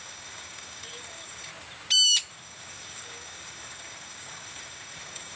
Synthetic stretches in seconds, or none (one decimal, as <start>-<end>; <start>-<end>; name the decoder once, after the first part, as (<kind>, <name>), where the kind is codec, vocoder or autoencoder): 0.0-1.5 (codec, DAC); 2.3-5.4